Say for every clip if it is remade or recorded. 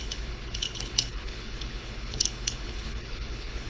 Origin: remade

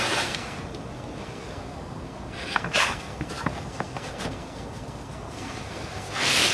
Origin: remade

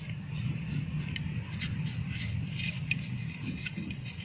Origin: recorded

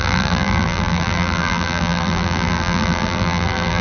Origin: remade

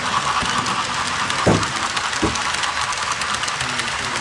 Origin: recorded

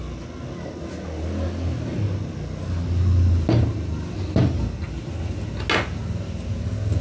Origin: recorded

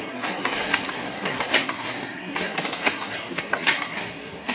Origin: remade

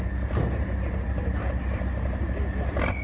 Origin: recorded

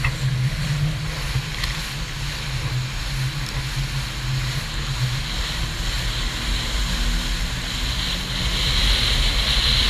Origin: recorded